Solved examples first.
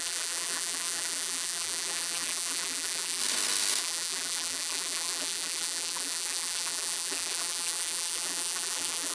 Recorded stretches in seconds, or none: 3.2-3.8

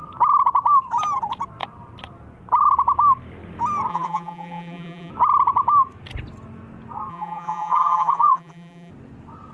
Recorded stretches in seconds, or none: 0.0-3.9; 5.1-7.1; 8.9-9.5

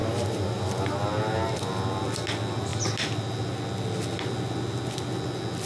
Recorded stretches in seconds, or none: 1.0-5.7